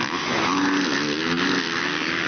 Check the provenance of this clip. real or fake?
real